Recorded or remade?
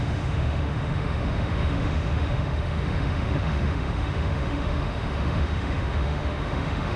remade